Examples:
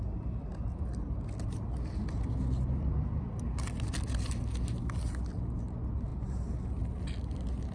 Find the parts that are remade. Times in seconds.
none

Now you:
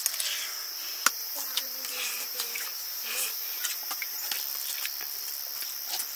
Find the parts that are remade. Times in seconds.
0.6-4.3